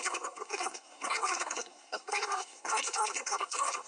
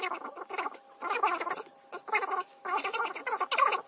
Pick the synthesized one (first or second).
first